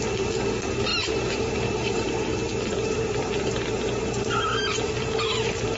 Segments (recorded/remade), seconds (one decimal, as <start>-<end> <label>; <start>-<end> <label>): 0.0-0.9 recorded; 0.9-3.5 remade; 3.5-4.5 recorded; 4.5-5.8 remade